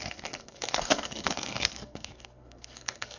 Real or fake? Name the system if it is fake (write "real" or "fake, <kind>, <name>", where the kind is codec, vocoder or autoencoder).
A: fake, codec, SNAC